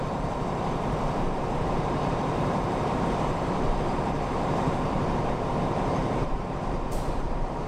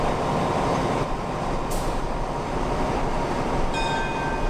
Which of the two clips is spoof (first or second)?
first